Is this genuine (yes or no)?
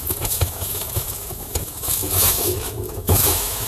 no